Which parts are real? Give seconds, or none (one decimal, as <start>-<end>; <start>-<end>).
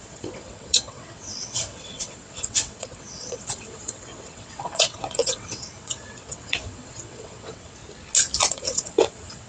7.8-8.5